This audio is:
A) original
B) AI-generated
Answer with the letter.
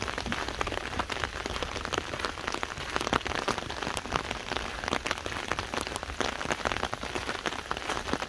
A